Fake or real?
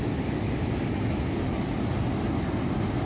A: real